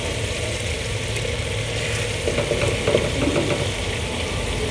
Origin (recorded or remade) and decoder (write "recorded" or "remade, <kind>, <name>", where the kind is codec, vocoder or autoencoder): recorded